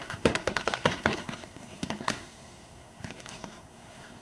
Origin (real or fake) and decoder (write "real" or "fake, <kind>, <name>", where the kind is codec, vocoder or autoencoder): fake, codec, SNAC